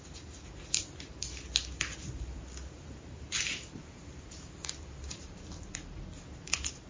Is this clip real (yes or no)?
no